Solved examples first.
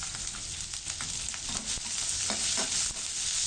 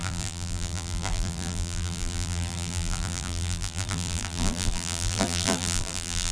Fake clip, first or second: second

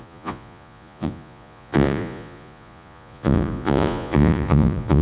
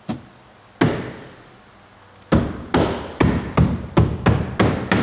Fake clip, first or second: first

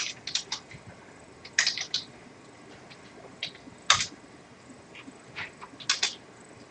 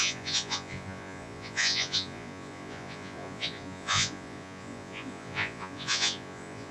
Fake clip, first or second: second